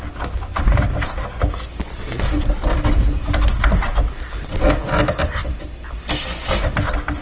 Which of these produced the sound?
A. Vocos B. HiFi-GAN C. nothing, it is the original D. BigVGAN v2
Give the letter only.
C